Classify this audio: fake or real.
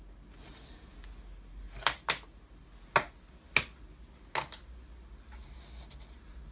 real